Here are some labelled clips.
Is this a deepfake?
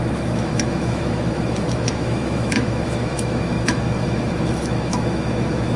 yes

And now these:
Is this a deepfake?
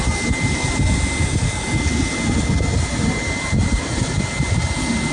no